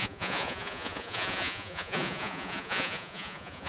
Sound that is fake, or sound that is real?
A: fake